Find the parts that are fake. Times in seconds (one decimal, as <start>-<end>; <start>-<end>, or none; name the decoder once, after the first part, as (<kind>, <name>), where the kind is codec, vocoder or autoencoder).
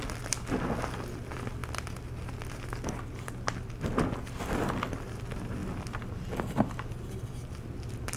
5.6-7.1 (vocoder, BigVGAN v2)